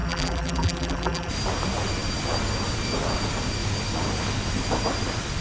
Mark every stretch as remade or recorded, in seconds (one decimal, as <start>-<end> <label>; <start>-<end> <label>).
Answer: 0.0-1.3 remade; 1.3-5.4 recorded